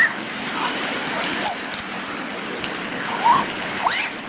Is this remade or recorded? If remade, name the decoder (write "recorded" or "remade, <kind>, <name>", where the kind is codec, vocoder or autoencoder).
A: recorded